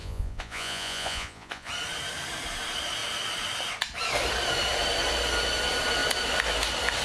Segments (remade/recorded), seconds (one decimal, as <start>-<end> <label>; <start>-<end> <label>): 0.0-1.7 remade; 1.7-7.0 recorded